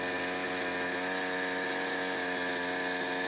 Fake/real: real